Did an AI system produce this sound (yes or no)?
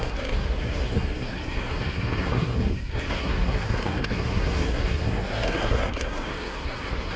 yes